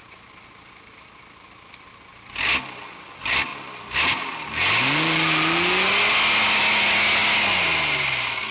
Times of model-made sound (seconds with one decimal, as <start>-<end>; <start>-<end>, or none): none